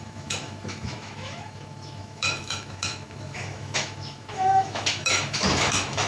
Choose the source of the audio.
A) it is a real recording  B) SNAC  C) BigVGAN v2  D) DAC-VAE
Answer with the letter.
D